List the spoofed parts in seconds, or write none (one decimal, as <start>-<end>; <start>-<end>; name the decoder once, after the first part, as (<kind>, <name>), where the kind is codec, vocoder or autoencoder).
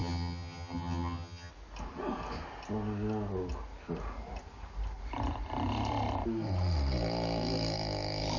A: 0.0-1.5 (vocoder, HiFi-GAN)